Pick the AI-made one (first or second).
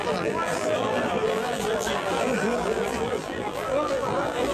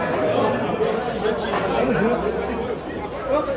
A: first